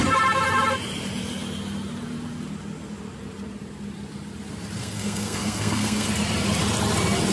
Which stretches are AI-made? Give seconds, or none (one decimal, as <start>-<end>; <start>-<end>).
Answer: 4.8-6.1